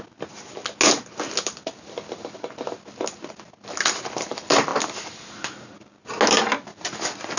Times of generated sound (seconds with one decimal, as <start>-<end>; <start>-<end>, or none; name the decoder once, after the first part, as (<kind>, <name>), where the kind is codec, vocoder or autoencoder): none